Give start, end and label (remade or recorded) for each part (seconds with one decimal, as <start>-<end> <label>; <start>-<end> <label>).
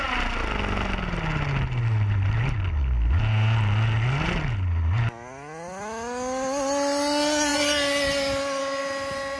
0.0-9.4 recorded